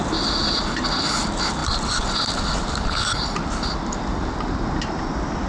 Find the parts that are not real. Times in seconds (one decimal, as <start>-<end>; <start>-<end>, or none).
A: none